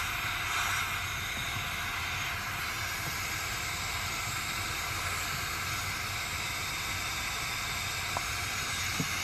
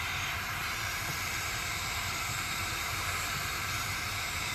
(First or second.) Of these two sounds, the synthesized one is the second